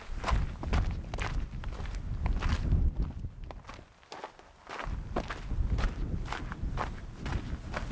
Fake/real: real